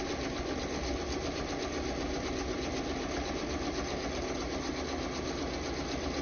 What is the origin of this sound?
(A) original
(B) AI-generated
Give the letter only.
A